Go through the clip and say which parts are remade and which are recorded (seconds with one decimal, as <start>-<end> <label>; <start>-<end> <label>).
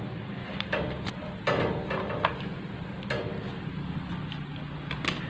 0.0-5.3 recorded